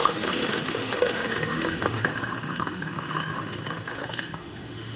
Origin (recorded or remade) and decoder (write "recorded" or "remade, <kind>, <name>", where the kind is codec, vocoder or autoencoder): remade, autoencoder, DAC-VAE